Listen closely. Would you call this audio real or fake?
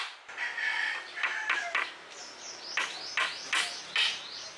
real